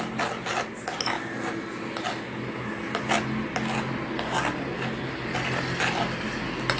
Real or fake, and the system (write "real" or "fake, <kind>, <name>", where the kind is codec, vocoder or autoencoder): real